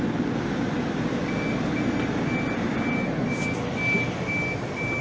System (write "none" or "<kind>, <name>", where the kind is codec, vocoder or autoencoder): none